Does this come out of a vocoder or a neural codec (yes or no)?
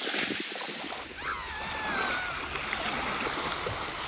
no